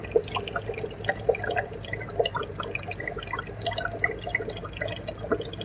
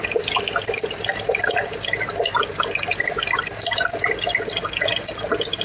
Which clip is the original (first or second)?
first